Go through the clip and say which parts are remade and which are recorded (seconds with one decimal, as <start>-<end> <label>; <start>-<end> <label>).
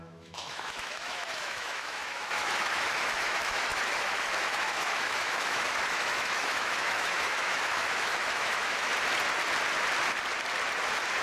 0.0-8.9 remade; 8.9-11.2 recorded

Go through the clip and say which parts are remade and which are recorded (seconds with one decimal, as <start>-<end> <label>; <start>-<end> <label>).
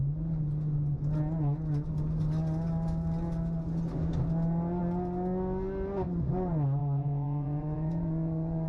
0.0-6.8 recorded; 6.8-8.7 remade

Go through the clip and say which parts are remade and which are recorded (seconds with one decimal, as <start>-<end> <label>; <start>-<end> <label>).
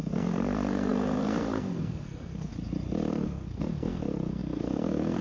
0.0-2.5 remade; 2.5-3.1 recorded; 3.1-5.2 remade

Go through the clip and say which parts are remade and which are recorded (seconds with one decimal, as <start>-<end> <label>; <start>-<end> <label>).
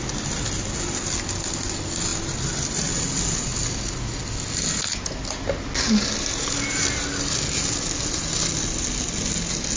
0.0-9.8 recorded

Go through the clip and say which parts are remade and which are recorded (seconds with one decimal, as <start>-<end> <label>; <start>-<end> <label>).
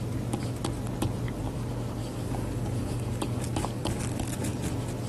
0.0-2.0 recorded; 2.0-4.2 remade; 4.2-5.1 recorded